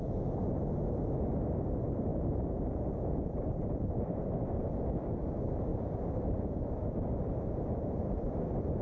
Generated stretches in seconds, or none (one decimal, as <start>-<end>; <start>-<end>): 2.1-4.5; 5.7-6.7